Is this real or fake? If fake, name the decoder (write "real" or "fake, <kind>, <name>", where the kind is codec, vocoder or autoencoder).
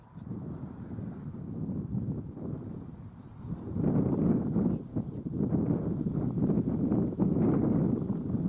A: real